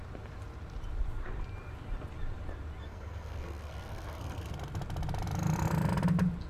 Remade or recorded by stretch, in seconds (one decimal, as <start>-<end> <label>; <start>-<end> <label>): 0.0-2.8 recorded; 2.8-4.5 remade; 4.5-6.5 recorded

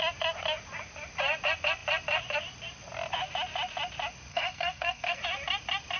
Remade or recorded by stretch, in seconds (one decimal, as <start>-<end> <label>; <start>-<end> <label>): 0.0-4.3 recorded; 4.3-5.2 remade; 5.2-6.0 recorded

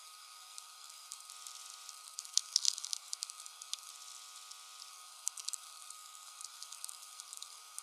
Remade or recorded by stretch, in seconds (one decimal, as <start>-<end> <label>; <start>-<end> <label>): 0.0-1.3 remade; 1.3-1.9 recorded; 1.9-3.9 remade; 3.9-4.9 recorded; 4.9-7.8 remade

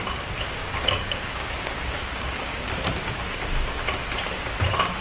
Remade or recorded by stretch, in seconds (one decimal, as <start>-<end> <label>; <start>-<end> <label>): 0.0-0.6 recorded; 0.6-2.7 remade; 2.7-5.0 recorded

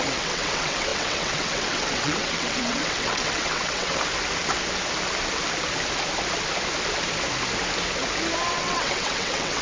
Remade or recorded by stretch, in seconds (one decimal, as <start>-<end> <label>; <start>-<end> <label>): 0.0-4.1 remade; 4.1-8.5 recorded; 8.5-9.6 remade

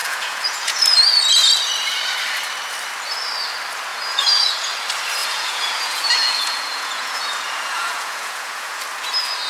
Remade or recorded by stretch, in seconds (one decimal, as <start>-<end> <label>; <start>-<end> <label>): 0.0-0.8 remade; 0.8-3.9 recorded; 3.9-4.7 remade; 4.7-5.2 recorded; 5.2-8.8 remade; 8.8-9.5 recorded

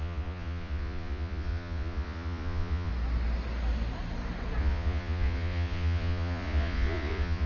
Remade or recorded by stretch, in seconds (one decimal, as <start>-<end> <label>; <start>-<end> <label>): 0.0-2.9 remade; 2.9-4.6 recorded; 4.6-7.5 remade

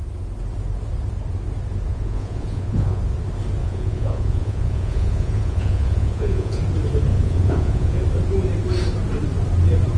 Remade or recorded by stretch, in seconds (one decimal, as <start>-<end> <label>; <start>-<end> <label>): 0.0-1.9 recorded; 1.9-3.0 remade; 3.0-3.6 recorded; 3.6-6.6 remade; 6.6-7.1 recorded; 7.1-8.0 remade; 8.0-10.0 recorded